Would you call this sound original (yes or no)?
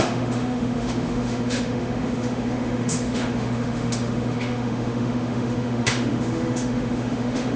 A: no